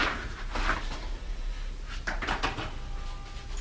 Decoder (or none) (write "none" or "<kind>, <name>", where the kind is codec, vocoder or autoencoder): none